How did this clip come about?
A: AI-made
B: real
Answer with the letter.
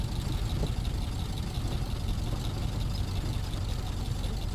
B